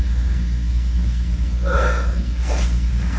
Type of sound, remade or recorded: remade